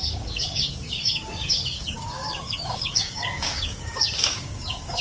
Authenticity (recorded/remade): remade